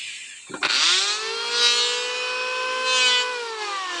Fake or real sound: real